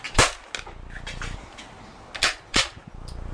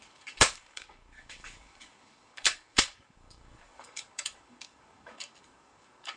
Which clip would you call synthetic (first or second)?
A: second